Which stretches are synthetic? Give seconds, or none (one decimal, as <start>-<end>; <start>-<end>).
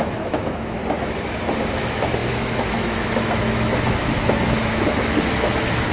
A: 0.0-0.8; 1.7-5.9